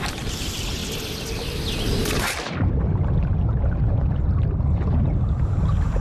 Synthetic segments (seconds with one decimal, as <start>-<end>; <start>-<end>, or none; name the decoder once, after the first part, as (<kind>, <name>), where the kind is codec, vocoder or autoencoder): 0.0-0.8 (vocoder, BigVGAN v2); 3.6-6.0